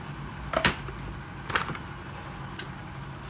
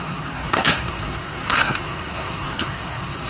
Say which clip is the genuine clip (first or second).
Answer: first